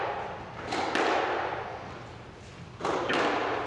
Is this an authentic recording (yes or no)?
yes